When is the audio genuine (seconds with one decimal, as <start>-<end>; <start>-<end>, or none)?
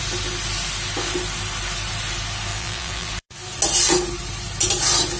0.0-2.5; 3.1-5.2